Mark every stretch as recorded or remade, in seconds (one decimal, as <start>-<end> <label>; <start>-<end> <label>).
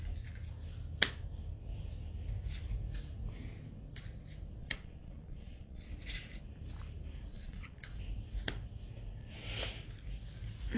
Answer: 0.0-4.6 recorded; 4.6-5.9 remade; 5.9-7.3 recorded; 7.3-8.0 remade; 8.0-10.8 recorded